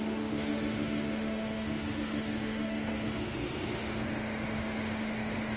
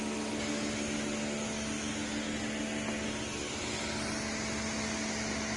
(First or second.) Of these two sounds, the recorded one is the second